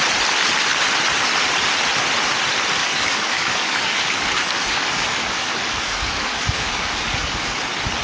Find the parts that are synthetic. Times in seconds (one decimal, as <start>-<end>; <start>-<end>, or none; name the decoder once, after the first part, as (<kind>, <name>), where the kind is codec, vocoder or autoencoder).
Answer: 2.8-7.6 (codec, DAC)